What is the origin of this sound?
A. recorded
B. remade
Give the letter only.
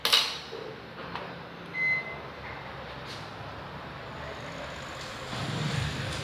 A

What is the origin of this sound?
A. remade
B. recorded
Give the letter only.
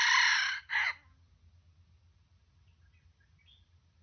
B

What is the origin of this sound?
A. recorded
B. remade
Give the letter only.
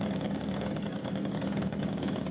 B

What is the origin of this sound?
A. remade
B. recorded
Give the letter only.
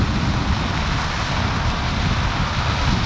B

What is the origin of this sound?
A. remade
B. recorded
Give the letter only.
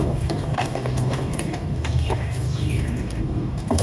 A